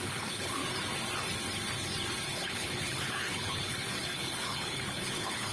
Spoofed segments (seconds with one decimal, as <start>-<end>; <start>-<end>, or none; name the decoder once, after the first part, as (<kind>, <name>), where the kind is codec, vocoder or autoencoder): 0.0-0.6 (codec, HILCodec); 2.3-5.5